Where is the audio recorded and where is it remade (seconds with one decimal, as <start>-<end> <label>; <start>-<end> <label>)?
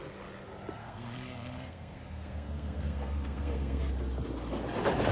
0.0-0.8 recorded; 0.8-3.9 remade; 3.9-5.1 recorded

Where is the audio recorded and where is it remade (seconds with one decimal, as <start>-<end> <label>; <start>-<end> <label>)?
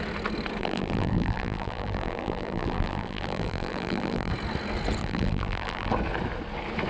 0.0-0.6 recorded; 0.6-4.3 remade; 4.3-5.0 recorded; 5.0-5.9 remade; 5.9-6.9 recorded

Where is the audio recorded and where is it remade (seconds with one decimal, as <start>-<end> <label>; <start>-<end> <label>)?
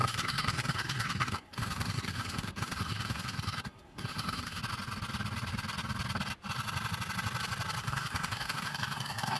0.0-4.6 remade; 4.6-7.8 recorded; 7.8-9.4 remade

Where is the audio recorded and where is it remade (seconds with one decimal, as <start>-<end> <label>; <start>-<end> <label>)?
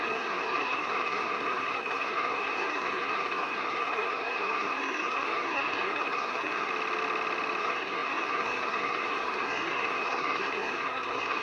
0.0-6.7 remade; 6.7-7.6 recorded; 7.6-11.4 remade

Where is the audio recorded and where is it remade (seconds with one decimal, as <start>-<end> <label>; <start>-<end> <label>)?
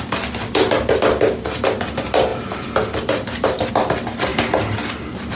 0.0-4.3 recorded; 4.3-5.3 remade